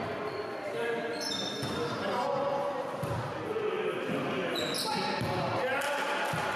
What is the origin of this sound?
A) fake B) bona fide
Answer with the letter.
B